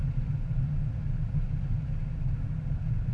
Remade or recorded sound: recorded